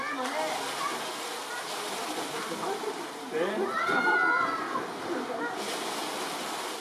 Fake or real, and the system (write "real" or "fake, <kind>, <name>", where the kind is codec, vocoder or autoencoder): real